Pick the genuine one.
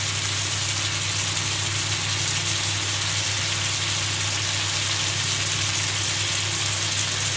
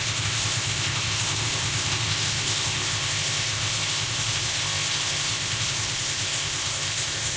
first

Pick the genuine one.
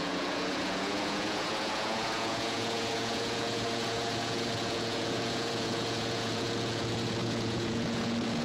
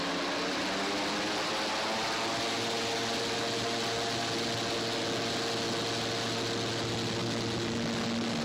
second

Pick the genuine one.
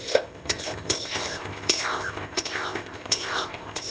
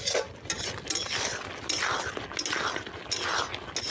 second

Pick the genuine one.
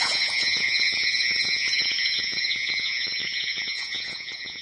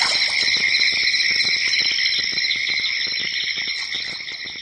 second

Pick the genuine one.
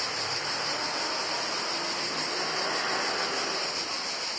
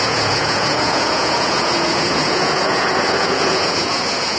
first